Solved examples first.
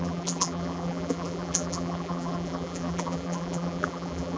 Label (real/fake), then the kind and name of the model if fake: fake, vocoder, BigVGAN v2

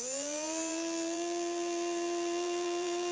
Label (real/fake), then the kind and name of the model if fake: fake, vocoder, BigVGAN v2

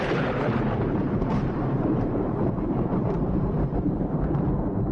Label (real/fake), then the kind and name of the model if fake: fake, vocoder, BigVGAN v2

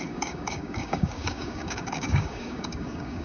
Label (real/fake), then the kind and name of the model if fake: fake, codec, DAC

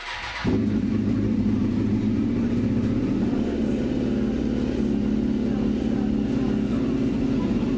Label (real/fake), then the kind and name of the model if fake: real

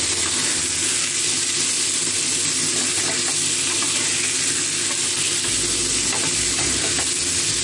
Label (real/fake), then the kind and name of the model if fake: real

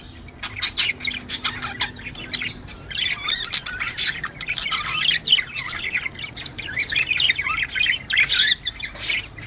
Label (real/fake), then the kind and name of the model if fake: real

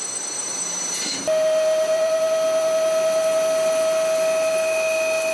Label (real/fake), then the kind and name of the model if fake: real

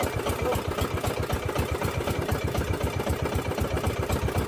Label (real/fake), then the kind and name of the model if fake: real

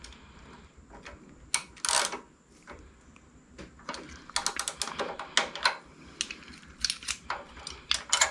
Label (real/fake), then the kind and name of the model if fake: real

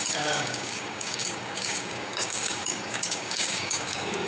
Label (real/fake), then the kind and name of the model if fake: fake, codec, DAC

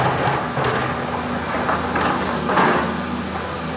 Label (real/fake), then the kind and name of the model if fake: real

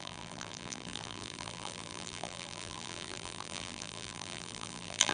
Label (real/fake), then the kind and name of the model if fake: fake, vocoder, BigVGAN v2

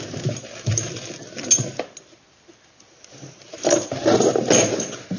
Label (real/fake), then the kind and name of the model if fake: real